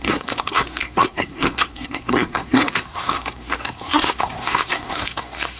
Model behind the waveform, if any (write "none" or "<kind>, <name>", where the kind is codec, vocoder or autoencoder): codec, SNAC